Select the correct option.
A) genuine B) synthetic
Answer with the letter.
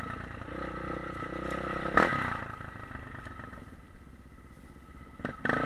A